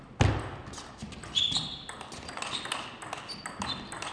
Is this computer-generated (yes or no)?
no